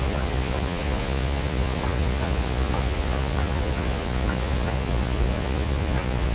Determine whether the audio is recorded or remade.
remade